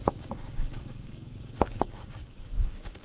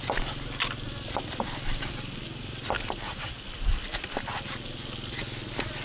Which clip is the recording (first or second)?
second